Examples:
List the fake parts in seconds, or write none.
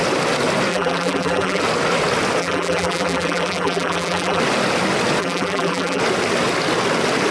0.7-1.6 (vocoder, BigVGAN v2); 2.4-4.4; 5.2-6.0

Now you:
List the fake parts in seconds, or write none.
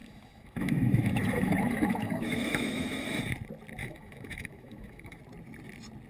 0.0-3.2 (autoencoder, DAC-VAE); 3.8-5.2